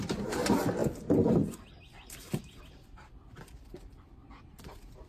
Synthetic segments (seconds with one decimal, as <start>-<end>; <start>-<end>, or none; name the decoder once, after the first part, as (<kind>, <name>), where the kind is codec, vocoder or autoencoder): none